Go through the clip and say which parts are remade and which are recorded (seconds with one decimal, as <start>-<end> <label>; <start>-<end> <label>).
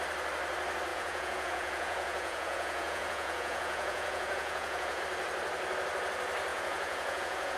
0.0-0.9 recorded; 0.9-5.0 remade; 5.0-6.5 recorded; 6.5-7.6 remade